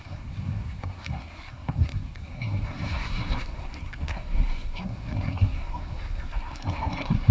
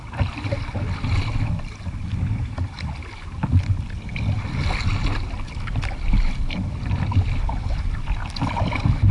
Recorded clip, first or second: second